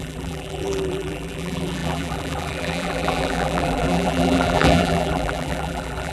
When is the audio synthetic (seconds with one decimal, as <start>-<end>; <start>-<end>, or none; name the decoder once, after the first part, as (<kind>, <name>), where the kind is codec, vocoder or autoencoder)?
0.0-6.1 (vocoder, BigVGAN v2)